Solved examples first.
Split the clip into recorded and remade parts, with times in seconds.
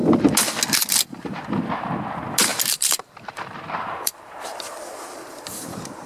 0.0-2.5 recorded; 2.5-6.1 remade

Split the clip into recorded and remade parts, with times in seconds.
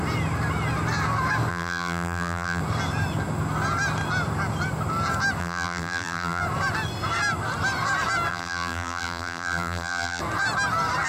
0.0-1.5 recorded; 1.5-2.6 remade; 2.6-5.4 recorded; 5.4-6.4 remade; 6.4-8.3 recorded; 8.3-10.2 remade; 10.2-11.1 recorded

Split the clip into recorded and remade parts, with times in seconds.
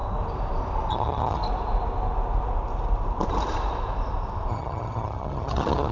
0.0-0.9 recorded; 0.9-1.4 remade; 1.4-4.5 recorded; 4.5-5.9 remade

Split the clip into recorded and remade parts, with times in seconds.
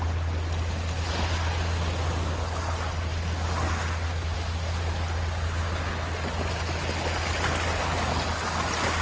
0.0-9.0 recorded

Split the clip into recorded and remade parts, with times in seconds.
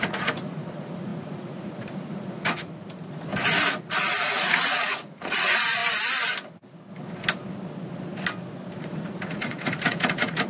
0.0-3.3 remade; 3.3-3.8 recorded; 3.8-5.8 remade; 5.8-8.8 recorded; 8.8-10.5 remade